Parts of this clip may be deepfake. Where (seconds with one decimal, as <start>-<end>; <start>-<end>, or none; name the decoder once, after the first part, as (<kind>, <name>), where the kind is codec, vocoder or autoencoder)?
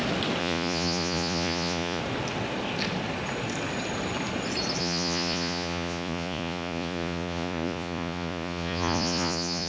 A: 0.4-2.0 (vocoder, Vocos); 4.8-9.7